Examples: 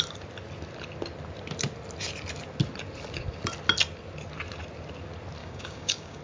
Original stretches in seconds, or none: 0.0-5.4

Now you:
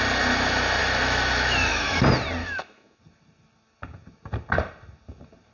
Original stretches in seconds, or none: 0.0-0.8; 2.0-2.4; 3.0-5.5

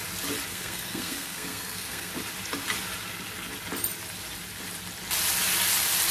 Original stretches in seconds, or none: 0.0-0.5; 2.1-6.1

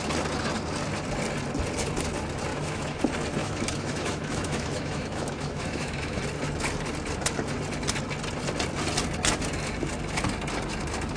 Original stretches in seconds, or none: 0.0-2.5; 3.0-3.4; 6.2-11.2

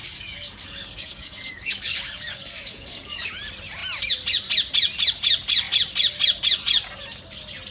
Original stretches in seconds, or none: 3.3-7.7

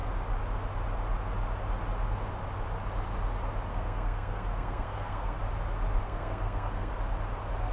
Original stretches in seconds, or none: 0.0-3.7; 5.4-6.0; 6.9-7.7

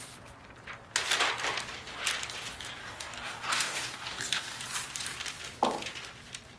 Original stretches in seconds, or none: 0.0-2.8; 4.6-6.6